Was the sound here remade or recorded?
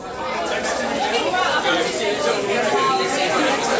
recorded